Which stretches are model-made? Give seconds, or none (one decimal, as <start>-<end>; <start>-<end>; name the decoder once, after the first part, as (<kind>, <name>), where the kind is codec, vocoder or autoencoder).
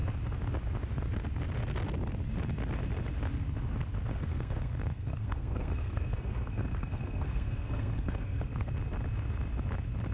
4.1-8.7 (codec, SNAC)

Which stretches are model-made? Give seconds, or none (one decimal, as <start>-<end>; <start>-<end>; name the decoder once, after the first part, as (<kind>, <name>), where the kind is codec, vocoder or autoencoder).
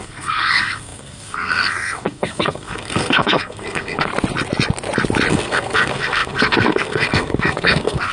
0.0-4.1 (codec, SNAC); 5.3-8.1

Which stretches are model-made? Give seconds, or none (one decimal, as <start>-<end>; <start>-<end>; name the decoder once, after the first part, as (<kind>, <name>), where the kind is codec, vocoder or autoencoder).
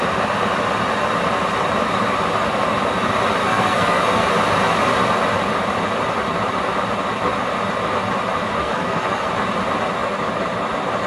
3.4-4.3 (codec, SNAC); 8.6-9.3